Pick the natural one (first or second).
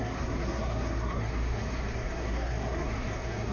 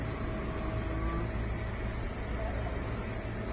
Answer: second